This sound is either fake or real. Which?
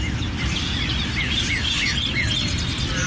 real